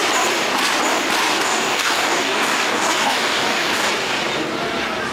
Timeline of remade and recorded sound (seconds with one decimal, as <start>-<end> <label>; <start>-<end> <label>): 0.0-1.3 recorded; 1.3-3.9 remade; 3.9-5.1 recorded